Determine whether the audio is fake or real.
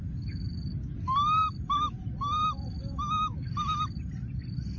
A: real